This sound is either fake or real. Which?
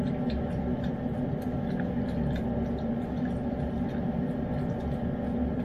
real